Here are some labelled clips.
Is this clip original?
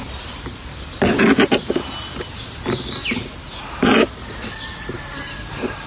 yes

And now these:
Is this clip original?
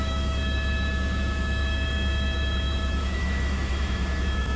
no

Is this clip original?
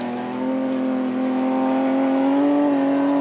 yes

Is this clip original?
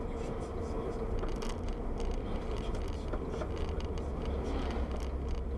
yes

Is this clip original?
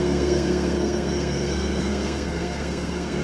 no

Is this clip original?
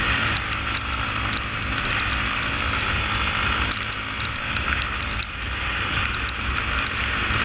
yes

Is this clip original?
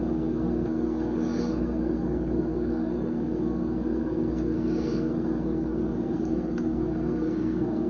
no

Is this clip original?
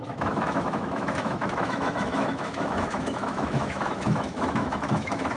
no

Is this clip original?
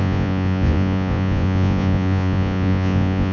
no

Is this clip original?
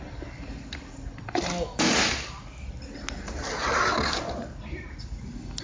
yes